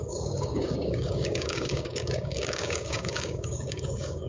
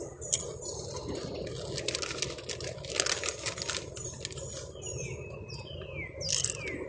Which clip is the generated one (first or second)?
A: first